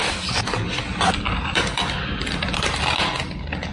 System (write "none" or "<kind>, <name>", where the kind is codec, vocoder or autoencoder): none